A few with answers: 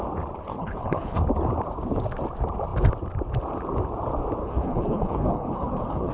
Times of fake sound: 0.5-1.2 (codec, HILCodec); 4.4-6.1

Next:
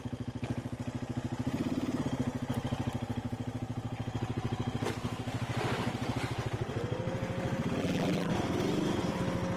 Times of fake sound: 7.8-8.3 (vocoder, BigVGAN v2)

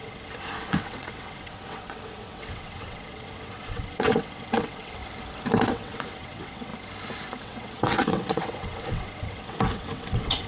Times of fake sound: 0.0-5.0 (vocoder, WaveNeXt); 5.7-6.7; 7.4-10.5

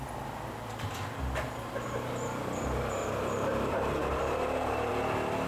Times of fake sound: 3.0-4.9 (vocoder, BigVGAN v2)

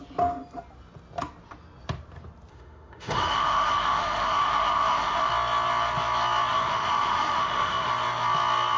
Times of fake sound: 2.5-5.3 (autoencoder, DAC-VAE); 6.5-7.9

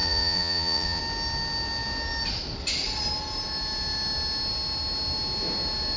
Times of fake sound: 0.0-1.0 (vocoder, Vocos)